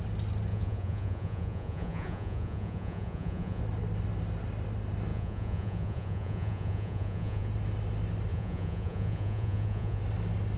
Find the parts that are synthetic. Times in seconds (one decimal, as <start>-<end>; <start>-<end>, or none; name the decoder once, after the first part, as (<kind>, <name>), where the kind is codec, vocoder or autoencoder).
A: 0.5-3.6 (vocoder, Vocos); 5.1-7.5; 8.3-10.0